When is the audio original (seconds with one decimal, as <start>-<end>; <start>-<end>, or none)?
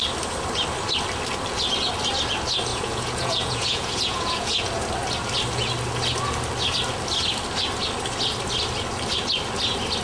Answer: 0.0-2.7; 4.7-10.0